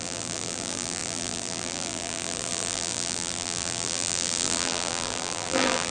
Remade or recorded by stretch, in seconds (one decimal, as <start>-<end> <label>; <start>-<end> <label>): 0.0-5.9 remade